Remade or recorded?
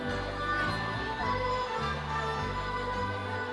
recorded